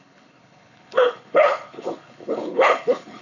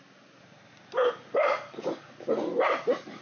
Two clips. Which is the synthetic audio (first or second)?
first